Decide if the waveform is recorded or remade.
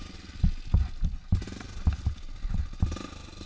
recorded